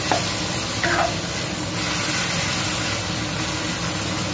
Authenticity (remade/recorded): recorded